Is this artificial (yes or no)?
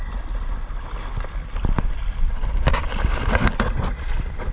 yes